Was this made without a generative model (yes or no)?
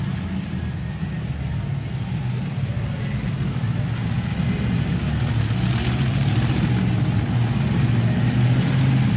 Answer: yes